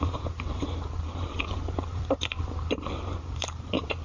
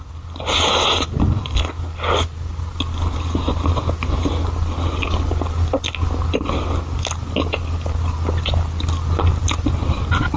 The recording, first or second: second